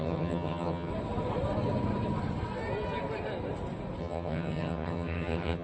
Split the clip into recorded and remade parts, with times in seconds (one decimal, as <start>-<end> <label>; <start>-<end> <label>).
0.0-0.9 remade; 0.9-4.0 recorded; 4.0-5.6 remade